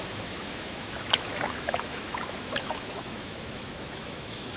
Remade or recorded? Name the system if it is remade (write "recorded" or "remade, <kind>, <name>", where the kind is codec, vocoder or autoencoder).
remade, autoencoder, DAC-VAE